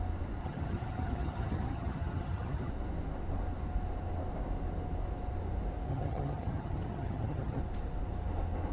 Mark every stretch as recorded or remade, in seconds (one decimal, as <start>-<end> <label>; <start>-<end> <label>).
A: 0.0-0.4 recorded; 0.4-2.7 remade; 2.7-5.9 recorded; 5.9-7.6 remade; 7.6-8.7 recorded